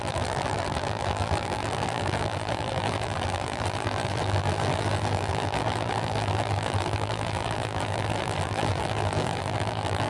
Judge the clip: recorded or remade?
remade